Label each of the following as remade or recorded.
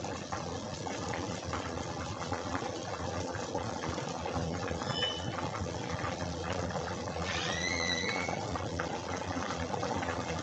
remade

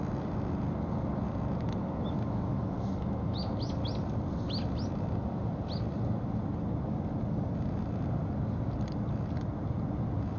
recorded